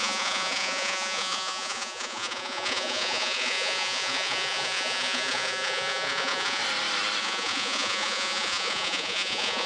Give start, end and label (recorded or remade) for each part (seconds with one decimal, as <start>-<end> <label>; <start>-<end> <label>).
0.0-6.6 remade; 6.6-7.2 recorded; 7.2-9.7 remade